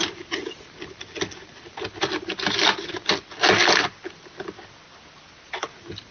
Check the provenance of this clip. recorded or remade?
recorded